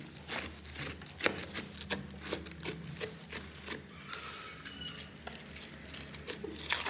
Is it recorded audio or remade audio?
recorded